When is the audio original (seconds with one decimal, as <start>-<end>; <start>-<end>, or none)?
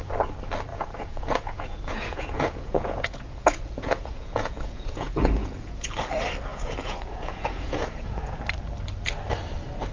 0.0-0.7; 5.9-6.5; 8.4-9.9